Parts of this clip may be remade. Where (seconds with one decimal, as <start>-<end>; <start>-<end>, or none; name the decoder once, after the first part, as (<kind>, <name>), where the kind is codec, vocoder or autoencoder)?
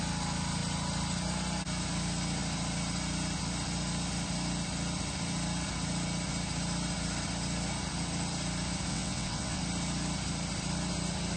8.9-9.6 (vocoder, WaveNeXt)